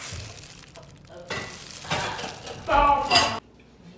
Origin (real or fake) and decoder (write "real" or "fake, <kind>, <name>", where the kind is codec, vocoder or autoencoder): real